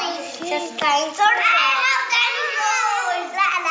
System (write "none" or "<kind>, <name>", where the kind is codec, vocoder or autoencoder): none